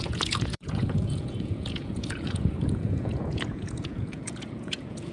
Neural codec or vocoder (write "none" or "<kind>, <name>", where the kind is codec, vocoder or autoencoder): vocoder, Vocos